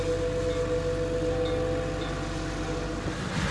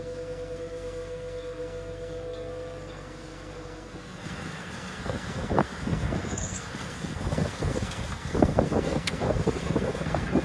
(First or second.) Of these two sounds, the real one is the first